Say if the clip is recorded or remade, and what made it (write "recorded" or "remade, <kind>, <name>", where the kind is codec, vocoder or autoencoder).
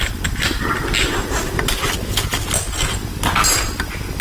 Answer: recorded